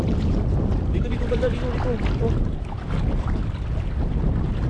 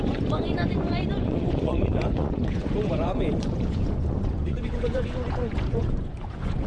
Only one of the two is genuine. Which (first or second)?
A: first